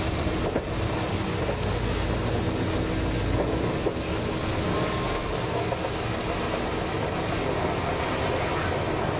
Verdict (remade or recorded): recorded